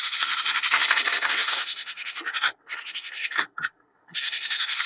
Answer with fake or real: fake